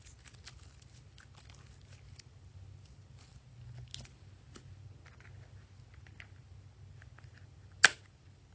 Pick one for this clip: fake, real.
real